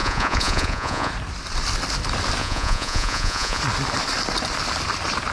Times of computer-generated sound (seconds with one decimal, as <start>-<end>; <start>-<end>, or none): 0.0-1.1; 2.4-3.6